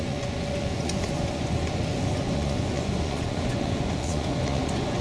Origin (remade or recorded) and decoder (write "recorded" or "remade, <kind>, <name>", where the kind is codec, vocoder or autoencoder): remade, vocoder, Vocos